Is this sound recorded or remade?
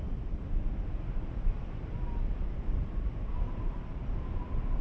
recorded